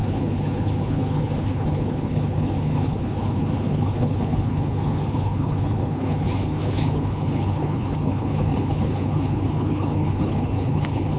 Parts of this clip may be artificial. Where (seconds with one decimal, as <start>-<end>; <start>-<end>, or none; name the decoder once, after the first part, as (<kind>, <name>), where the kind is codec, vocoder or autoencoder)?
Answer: 0.0-11.2 (codec, HILCodec)